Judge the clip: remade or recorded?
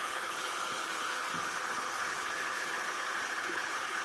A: remade